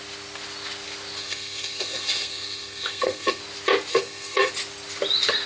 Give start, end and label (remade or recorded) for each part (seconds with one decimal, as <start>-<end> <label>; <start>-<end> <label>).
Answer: 0.0-1.2 recorded; 1.2-3.4 remade; 3.4-3.9 recorded; 3.9-4.5 remade; 4.5-5.5 recorded